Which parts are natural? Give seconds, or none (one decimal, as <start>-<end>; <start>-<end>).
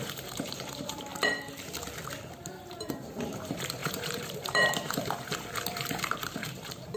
1.1-2.4